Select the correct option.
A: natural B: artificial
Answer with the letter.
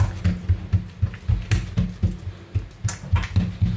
A